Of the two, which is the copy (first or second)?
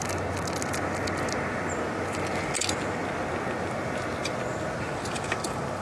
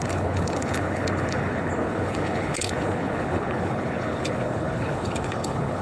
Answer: second